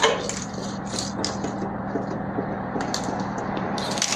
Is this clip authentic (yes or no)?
yes